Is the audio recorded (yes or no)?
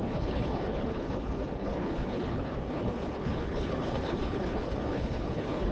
no